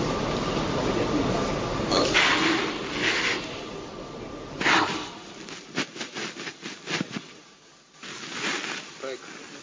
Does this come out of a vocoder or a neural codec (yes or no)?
no